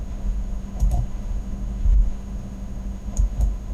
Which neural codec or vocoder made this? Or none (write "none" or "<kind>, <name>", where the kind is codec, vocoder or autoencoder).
autoencoder, DAC-VAE